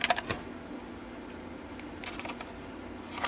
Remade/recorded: recorded